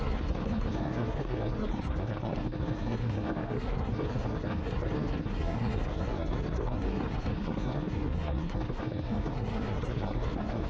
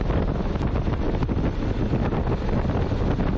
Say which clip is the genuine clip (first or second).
second